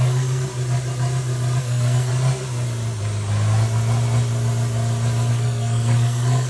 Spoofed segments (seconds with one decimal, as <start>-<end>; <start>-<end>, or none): 0.0-0.5; 1.6-2.1; 5.3-6.5